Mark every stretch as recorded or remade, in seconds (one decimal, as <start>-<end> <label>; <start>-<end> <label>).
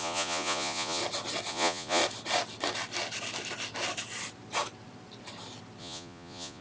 0.0-1.0 remade; 1.0-1.5 recorded; 1.5-2.0 remade; 2.0-5.8 recorded; 5.8-6.6 remade